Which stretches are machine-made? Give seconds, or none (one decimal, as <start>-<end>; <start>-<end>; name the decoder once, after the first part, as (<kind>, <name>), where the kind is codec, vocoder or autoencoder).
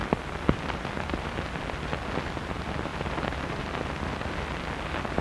none